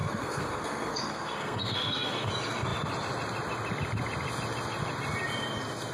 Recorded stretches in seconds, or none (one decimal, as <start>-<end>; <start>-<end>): 2.3-5.9